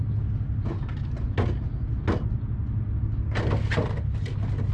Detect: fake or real real